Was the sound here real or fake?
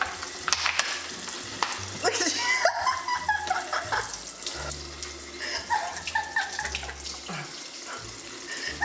real